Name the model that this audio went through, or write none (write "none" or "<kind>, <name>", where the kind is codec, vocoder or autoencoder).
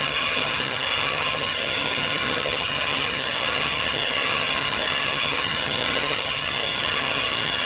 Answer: vocoder, HiFi-GAN